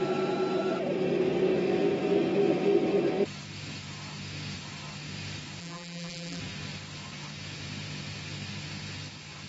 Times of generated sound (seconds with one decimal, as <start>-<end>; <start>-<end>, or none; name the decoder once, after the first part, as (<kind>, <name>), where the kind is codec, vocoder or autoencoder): 5.6-6.4 (vocoder, BigVGAN v2)

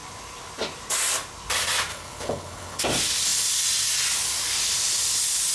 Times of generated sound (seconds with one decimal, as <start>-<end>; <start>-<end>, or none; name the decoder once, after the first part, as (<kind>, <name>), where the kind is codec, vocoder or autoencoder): 1.9-2.8 (codec, HILCodec)

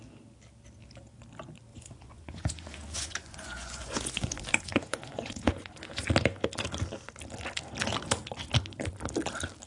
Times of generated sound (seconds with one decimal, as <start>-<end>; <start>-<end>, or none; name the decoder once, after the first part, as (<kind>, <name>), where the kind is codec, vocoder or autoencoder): 1.7-6.1 (vocoder, Vocos)

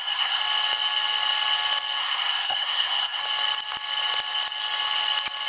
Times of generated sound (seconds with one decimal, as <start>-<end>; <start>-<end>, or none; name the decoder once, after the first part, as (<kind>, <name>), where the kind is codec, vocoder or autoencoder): 0.0-0.4 (codec, SNAC); 2.0-3.2

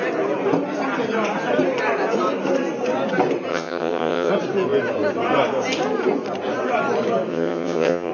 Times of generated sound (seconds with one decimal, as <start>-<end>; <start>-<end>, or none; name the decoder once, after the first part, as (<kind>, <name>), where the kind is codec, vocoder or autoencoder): 3.5-4.3 (vocoder, HiFi-GAN); 7.3-8.1

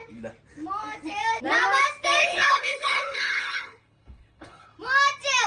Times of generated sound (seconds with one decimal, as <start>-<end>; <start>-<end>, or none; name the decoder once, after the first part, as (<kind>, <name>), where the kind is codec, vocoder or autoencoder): 2.2-4.8 (codec, HILCodec)

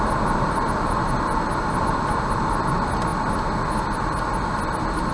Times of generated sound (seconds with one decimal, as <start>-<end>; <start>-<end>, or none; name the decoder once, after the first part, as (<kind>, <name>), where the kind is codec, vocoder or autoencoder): none